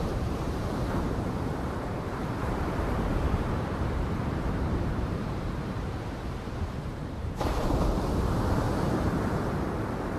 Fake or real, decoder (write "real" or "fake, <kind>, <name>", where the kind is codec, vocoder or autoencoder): fake, vocoder, BigVGAN v2